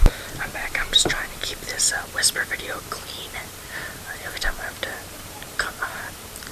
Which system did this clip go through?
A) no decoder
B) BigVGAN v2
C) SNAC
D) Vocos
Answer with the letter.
B